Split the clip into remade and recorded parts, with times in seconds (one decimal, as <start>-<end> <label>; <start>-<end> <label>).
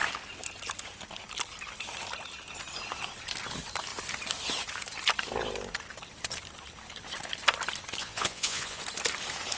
0.0-8.0 recorded; 8.0-8.8 remade; 8.8-9.6 recorded